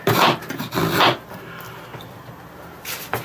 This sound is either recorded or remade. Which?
recorded